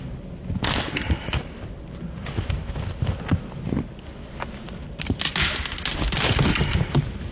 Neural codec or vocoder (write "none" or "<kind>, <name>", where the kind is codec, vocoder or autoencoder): none